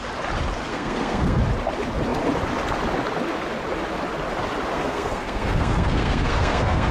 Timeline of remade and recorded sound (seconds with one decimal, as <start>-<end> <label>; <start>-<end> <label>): 0.0-0.7 recorded; 0.7-1.4 remade; 1.4-4.7 recorded; 4.7-6.9 remade